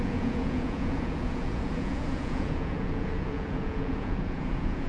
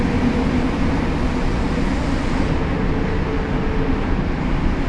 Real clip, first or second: second